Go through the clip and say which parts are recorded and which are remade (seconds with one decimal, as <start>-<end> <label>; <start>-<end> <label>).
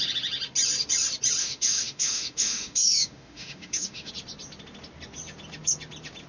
0.0-1.4 recorded; 1.4-4.1 remade; 4.1-6.3 recorded